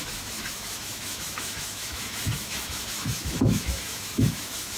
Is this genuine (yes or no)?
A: no